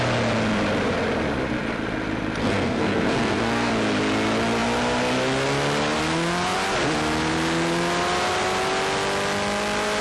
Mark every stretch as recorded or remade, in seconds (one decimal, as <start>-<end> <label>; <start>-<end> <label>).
0.0-2.4 recorded; 2.4-3.7 remade; 3.7-10.0 recorded